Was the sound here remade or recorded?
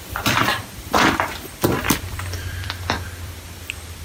remade